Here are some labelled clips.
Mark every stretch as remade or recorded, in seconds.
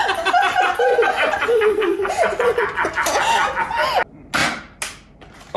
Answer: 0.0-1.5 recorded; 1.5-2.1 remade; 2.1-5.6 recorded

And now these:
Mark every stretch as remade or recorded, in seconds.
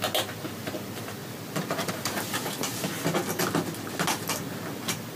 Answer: 0.0-5.2 recorded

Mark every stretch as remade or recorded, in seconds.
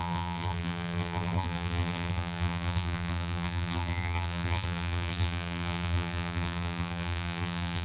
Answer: 0.0-7.8 remade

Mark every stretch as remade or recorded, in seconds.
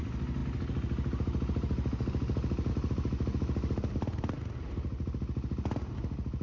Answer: 0.0-6.4 recorded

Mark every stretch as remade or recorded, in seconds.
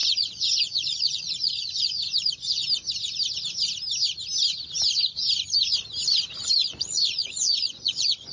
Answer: 0.0-2.6 remade; 2.6-6.4 recorded; 6.4-8.3 remade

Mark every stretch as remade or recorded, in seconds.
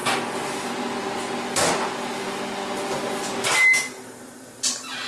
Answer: 0.0-5.1 recorded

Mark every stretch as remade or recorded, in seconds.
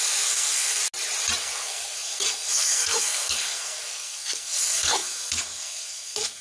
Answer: 0.0-0.8 remade; 0.8-1.4 recorded; 1.4-6.4 remade